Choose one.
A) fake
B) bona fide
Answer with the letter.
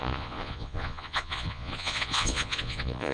A